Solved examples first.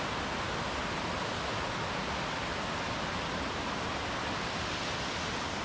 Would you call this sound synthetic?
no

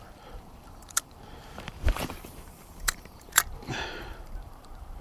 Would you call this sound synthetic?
yes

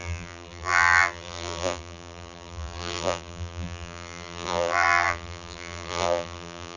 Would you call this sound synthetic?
yes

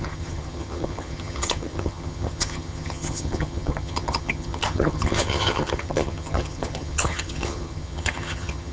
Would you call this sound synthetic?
yes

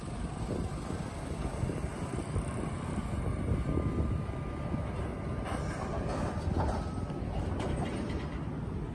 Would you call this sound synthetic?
no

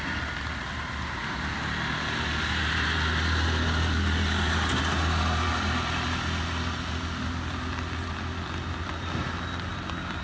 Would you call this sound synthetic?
no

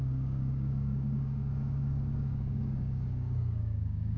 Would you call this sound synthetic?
yes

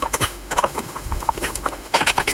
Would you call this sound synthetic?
yes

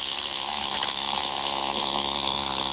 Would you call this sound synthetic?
yes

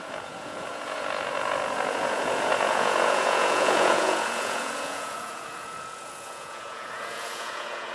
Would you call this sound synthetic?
yes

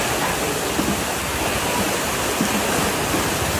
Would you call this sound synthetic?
no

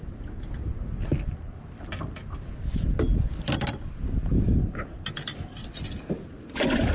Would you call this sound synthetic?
no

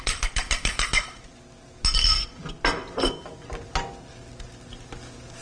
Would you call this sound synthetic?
no